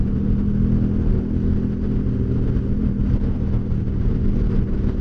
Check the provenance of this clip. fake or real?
real